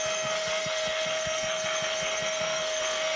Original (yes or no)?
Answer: no